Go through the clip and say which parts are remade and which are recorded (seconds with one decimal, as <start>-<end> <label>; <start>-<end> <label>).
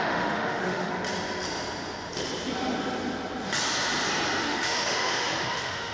0.0-0.9 remade; 0.9-4.4 recorded; 4.4-5.9 remade